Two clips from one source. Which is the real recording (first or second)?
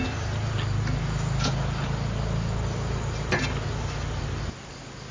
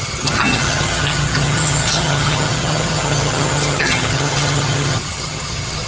first